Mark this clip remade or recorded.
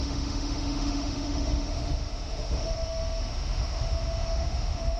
remade